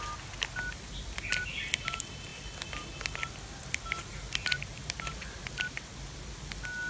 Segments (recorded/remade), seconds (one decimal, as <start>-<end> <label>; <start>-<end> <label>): 0.0-6.9 recorded